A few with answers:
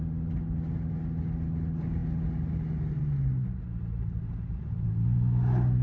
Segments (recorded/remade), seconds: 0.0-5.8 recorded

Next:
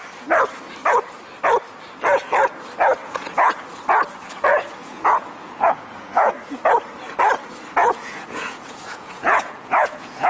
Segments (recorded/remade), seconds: 0.0-3.0 recorded; 3.0-3.5 remade; 3.5-4.5 recorded; 4.5-6.3 remade; 6.3-7.8 recorded; 7.8-10.3 remade

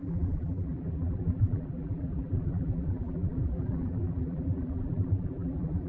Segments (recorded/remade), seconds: 0.0-5.9 remade

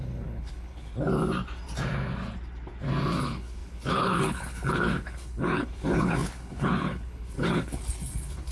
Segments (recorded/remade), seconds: 0.0-0.9 remade; 0.9-3.2 recorded; 3.2-8.5 remade